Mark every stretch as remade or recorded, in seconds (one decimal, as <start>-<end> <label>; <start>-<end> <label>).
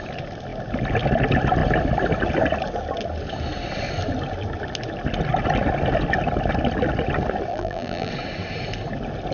0.0-7.5 recorded; 7.5-8.1 remade; 8.1-9.3 recorded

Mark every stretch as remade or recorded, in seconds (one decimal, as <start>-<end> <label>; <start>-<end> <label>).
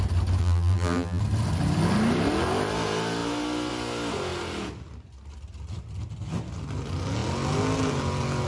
0.0-0.4 recorded; 0.4-1.2 remade; 1.2-8.5 recorded